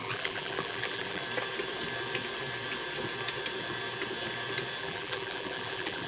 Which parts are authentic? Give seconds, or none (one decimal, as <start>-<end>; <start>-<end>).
1.2-4.8